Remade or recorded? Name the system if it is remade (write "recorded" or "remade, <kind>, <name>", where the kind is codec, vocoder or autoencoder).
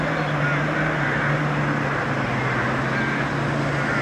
recorded